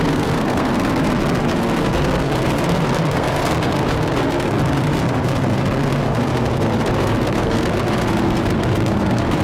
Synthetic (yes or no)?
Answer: yes